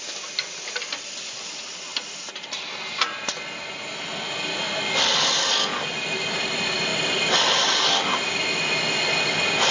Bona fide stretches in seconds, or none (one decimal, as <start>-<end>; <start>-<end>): 0.0-9.7